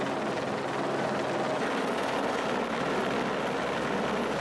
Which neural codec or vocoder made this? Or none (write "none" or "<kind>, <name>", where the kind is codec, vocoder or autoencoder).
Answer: none